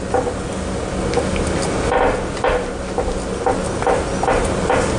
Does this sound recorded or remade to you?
recorded